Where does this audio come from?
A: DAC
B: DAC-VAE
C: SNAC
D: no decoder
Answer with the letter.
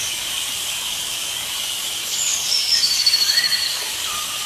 A